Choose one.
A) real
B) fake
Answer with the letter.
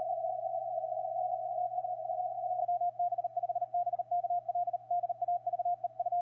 A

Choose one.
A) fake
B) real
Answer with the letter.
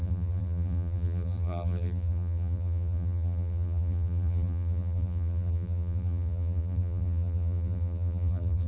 A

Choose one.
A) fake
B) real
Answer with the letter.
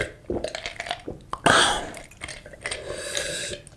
B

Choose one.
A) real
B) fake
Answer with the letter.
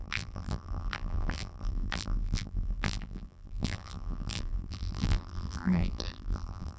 B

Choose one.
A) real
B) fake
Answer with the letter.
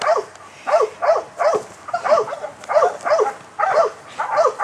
A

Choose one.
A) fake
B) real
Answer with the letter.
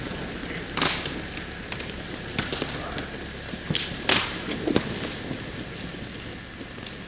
B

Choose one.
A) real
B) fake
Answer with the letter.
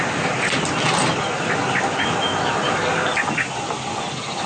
A